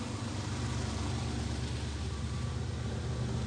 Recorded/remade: recorded